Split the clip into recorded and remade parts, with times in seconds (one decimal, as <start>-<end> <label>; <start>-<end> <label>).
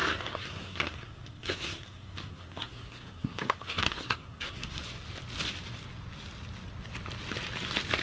0.0-4.8 remade; 4.8-8.0 recorded